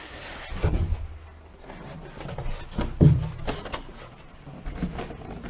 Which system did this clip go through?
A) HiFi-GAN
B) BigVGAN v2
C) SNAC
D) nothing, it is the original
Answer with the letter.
D